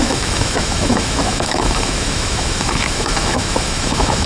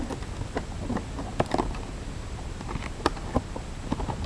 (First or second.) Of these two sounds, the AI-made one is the first